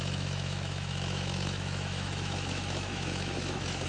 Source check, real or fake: fake